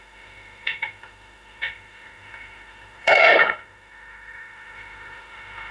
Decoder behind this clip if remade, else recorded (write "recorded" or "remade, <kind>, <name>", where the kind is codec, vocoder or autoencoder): remade, autoencoder, DAC-VAE